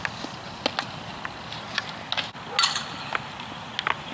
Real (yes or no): yes